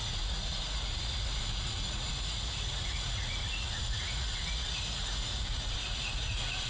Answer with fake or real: fake